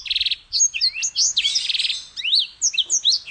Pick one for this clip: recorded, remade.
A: recorded